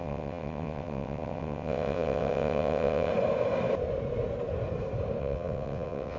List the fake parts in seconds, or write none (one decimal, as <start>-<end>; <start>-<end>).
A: 0.0-3.1; 5.2-6.2